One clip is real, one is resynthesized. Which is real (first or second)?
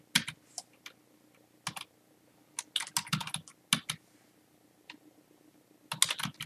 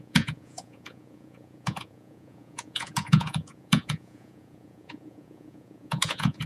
first